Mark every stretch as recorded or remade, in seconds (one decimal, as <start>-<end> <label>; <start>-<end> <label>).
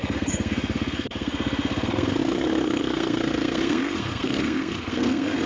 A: 0.0-5.5 remade